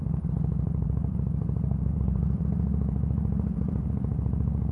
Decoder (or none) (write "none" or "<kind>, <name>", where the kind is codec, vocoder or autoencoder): vocoder, BigVGAN v2